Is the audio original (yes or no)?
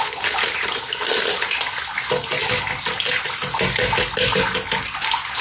yes